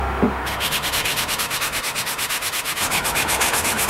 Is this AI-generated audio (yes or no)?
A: yes